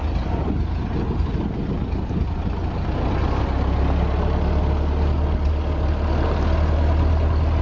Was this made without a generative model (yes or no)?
yes